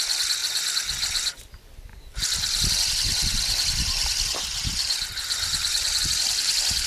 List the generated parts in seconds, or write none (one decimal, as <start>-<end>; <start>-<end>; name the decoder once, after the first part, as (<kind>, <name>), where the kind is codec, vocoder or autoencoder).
none